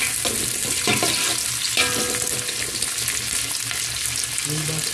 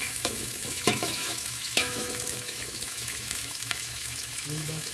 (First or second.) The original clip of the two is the first